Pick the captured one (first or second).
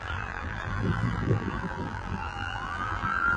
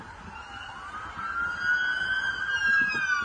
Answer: second